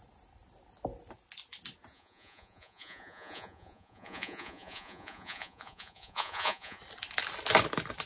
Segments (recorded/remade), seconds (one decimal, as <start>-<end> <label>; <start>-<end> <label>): 0.0-1.9 recorded; 1.9-6.8 remade; 6.8-8.1 recorded